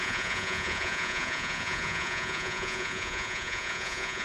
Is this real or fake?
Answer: fake